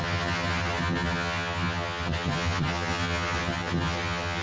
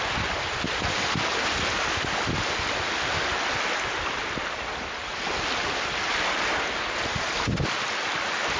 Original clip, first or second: second